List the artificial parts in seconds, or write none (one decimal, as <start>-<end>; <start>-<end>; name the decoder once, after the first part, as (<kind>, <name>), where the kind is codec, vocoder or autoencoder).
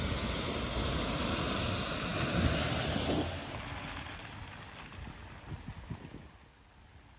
none